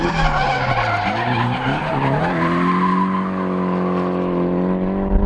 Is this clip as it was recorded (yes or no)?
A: yes